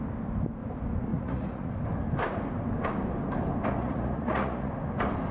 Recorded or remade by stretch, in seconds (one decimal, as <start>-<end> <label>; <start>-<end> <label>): 0.0-1.1 recorded; 1.1-1.7 remade; 1.7-3.8 recorded; 3.8-4.7 remade; 4.7-5.3 recorded